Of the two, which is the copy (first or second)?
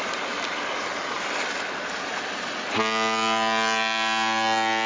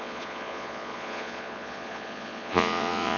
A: second